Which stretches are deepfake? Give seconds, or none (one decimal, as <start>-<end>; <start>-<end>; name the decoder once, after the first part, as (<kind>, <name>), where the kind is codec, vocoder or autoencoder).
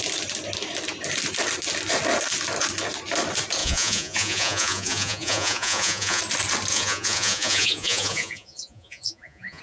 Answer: 3.6-6.2 (vocoder, Vocos); 6.7-9.6